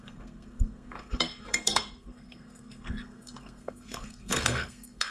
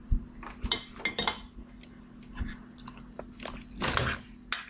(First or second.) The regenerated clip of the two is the first